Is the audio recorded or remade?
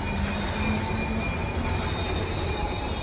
recorded